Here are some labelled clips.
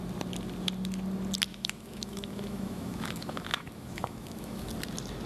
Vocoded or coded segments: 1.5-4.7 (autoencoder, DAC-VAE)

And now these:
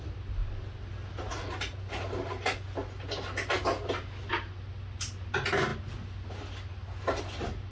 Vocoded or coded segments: none

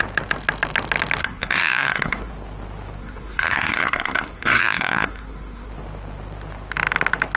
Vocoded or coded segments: 1.2-2.3 (codec, SNAC); 3.0-5.7

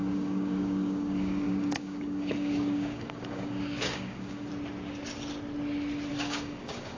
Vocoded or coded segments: 0.0-4.5 (codec, DAC); 6.1-7.0

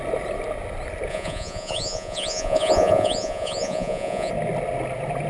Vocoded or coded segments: 1.1-4.3 (vocoder, Vocos)

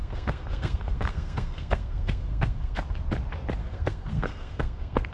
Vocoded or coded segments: 0.0-2.8 (codec, SNAC); 3.6-5.1

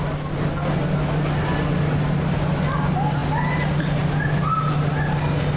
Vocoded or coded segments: none